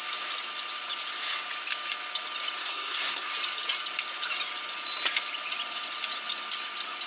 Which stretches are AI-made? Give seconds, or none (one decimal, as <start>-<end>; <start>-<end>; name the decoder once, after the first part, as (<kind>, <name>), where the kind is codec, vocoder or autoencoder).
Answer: 2.6-3.3 (codec, SNAC)